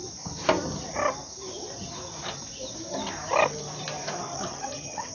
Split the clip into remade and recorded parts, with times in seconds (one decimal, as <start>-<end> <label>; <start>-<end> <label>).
0.0-4.3 recorded; 4.3-5.1 remade